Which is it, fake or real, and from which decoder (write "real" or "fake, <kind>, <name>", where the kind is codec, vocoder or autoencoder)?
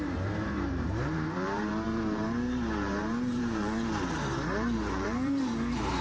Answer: fake, vocoder, BigVGAN v2